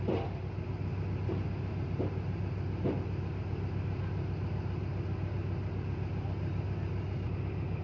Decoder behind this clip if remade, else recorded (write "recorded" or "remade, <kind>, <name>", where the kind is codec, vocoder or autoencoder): recorded